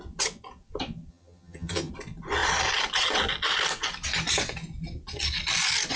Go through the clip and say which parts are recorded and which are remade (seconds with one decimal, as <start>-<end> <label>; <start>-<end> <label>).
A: 0.0-1.1 recorded; 1.1-1.9 remade; 1.9-6.0 recorded